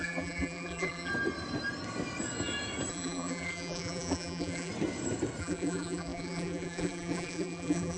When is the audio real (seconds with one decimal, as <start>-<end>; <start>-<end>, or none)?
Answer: 1.1-2.9; 4.7-5.4